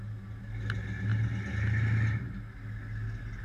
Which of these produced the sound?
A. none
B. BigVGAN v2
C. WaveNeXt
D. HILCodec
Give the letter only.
A